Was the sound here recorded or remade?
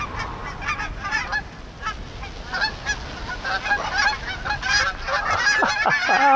recorded